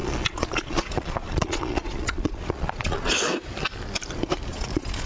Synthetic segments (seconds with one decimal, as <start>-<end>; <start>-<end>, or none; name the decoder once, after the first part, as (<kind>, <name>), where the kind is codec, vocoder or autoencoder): 0.0-3.1 (vocoder, Vocos); 4.5-5.1